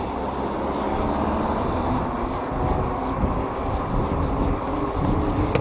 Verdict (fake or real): real